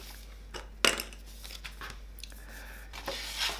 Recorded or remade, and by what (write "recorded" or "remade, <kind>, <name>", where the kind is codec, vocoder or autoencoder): recorded